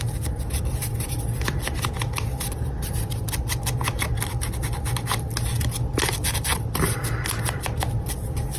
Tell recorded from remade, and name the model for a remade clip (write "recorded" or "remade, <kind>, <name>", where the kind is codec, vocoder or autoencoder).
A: recorded